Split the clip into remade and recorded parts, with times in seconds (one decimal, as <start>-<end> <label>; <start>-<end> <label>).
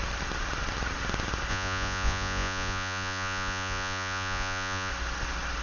0.0-1.5 recorded; 1.5-4.9 remade; 4.9-5.6 recorded